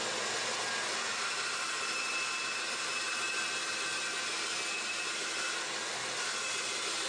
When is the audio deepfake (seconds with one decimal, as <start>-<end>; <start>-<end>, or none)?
none